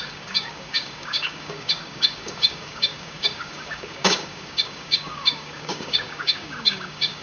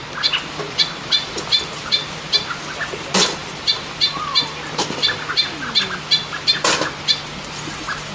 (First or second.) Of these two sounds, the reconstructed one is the first